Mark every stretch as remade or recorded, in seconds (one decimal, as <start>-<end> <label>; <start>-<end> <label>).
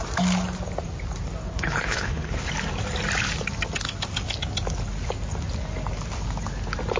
0.0-1.4 recorded; 1.4-2.5 remade; 2.5-7.0 recorded